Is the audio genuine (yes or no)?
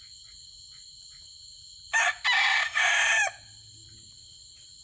yes